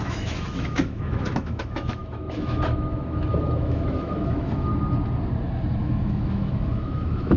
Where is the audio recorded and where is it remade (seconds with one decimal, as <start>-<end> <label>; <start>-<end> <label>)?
0.0-4.7 remade; 4.7-5.8 recorded; 5.8-7.4 remade